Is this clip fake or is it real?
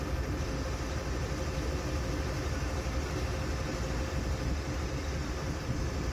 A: real